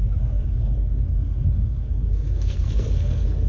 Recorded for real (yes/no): no